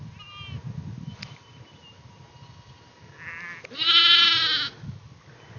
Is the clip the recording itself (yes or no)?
yes